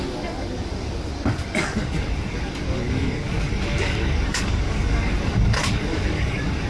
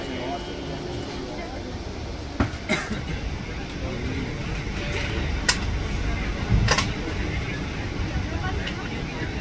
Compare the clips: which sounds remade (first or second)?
first